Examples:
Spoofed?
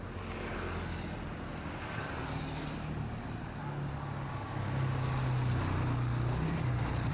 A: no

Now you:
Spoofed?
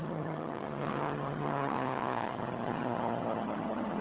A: yes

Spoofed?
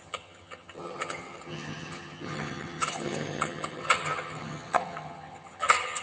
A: yes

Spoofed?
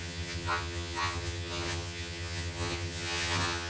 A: yes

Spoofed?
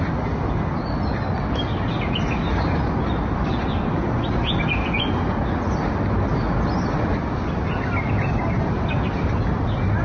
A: no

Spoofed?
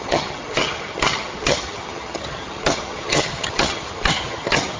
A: yes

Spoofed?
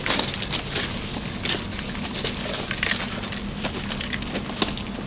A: no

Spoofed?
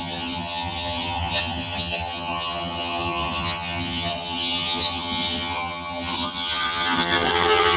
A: yes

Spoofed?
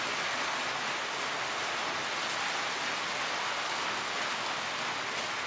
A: no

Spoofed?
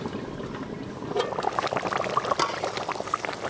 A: no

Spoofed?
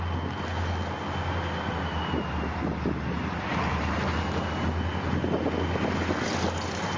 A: no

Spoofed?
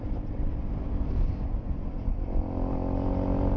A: no